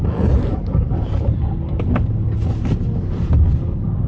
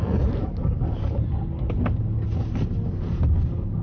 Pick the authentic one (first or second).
second